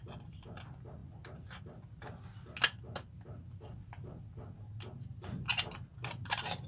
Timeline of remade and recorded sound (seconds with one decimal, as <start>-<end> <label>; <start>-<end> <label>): 0.0-6.7 recorded